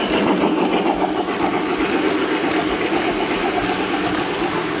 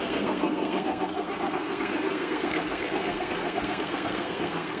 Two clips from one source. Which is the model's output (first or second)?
second